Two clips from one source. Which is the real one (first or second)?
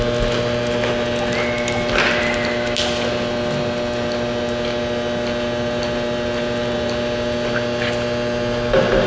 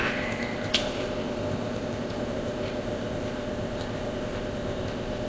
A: first